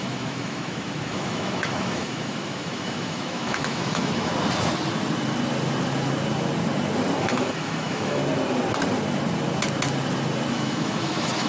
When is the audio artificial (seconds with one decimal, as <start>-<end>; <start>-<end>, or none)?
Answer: 0.0-4.3; 7.2-8.2; 10.5-11.5